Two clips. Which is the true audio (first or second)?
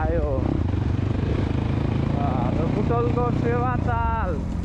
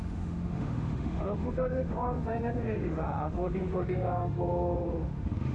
first